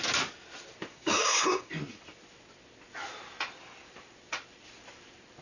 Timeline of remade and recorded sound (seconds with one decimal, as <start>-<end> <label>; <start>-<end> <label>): 0.0-0.9 recorded; 0.9-1.7 remade; 1.7-5.4 recorded